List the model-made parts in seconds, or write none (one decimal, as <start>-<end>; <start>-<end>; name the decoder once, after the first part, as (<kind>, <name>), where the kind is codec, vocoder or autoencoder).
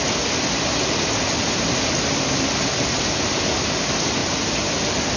none